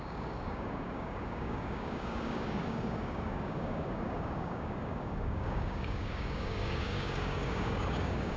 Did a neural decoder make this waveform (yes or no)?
yes